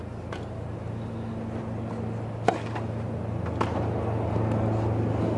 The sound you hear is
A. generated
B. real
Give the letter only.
B